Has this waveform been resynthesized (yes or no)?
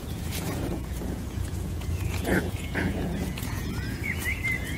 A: yes